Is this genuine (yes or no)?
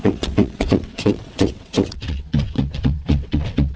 no